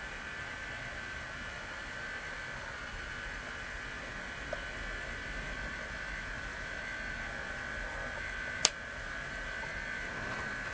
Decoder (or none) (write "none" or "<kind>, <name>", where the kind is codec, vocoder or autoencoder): none